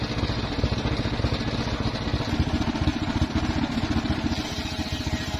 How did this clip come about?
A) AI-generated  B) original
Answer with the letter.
B